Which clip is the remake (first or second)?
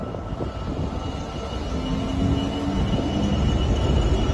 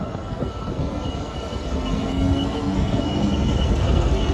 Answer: second